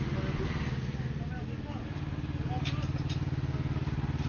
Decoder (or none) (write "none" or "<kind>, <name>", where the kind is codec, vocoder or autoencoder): none